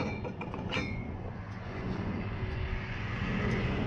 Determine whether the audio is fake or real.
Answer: fake